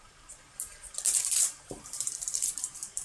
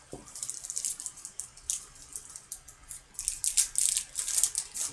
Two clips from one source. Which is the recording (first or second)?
second